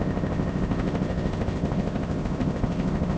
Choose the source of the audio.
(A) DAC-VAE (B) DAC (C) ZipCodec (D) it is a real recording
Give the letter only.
C